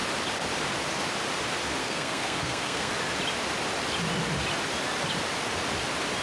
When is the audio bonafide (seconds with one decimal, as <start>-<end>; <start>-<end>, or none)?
0.0-1.8; 2.9-6.2